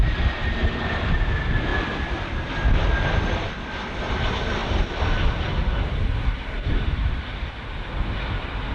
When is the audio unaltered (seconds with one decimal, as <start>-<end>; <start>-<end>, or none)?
0.0-8.7

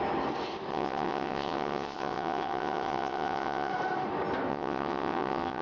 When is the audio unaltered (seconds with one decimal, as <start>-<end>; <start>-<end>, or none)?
0.0-0.7; 3.7-4.5

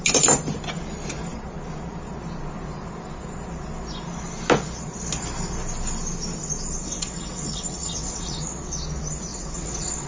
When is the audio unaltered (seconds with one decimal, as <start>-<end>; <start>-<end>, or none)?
0.0-6.8; 8.8-9.3

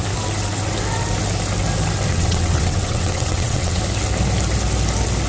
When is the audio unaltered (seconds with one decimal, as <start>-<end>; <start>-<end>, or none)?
0.0-2.1; 3.8-5.3

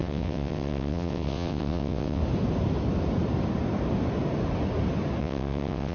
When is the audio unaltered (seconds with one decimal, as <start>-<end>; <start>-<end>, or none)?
2.2-5.2

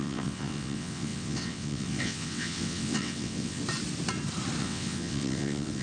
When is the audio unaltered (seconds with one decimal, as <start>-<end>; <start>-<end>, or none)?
3.6-4.6